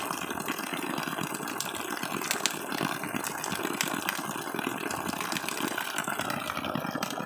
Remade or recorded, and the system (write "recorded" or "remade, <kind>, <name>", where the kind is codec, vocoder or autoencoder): recorded